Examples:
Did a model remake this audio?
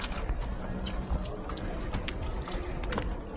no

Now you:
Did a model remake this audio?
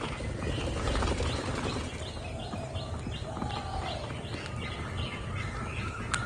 no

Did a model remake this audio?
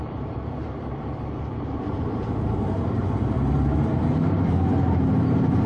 yes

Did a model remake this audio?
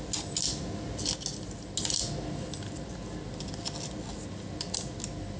no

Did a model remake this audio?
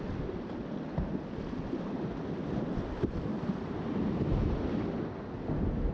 no